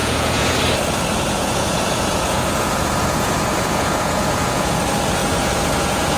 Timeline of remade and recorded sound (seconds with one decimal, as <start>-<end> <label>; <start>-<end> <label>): 0.0-0.6 remade; 0.6-1.1 recorded; 1.1-4.8 remade; 4.8-5.2 recorded; 5.2-6.2 remade